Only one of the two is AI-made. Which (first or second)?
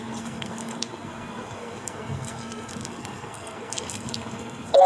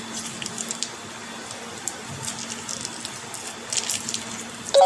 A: first